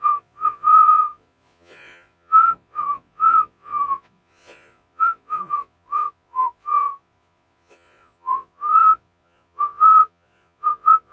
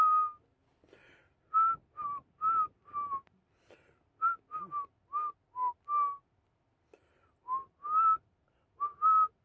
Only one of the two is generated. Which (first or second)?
first